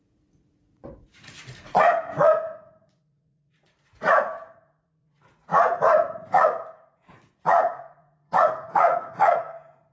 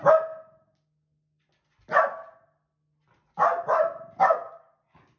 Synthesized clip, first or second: first